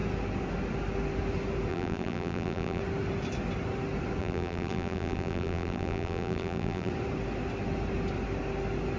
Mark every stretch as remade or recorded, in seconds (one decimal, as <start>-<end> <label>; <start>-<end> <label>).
0.0-1.7 recorded; 1.7-2.8 remade; 2.8-4.2 recorded; 4.2-6.9 remade; 6.9-9.0 recorded